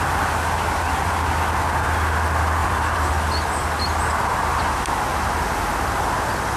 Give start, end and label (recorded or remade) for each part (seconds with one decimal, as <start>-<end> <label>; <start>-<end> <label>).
0.0-2.6 recorded; 2.6-3.1 remade; 3.1-5.1 recorded; 5.1-5.9 remade; 5.9-6.6 recorded